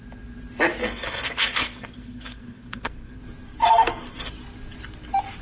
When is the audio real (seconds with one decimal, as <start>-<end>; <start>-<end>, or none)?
0.0-0.8; 3.2-3.6; 4.3-5.4